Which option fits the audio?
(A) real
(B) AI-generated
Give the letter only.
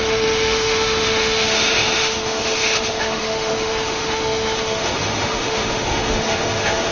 B